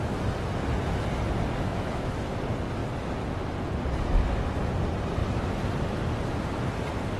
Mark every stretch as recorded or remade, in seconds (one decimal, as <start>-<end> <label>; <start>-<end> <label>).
0.0-1.7 recorded; 1.7-2.2 remade; 2.2-7.2 recorded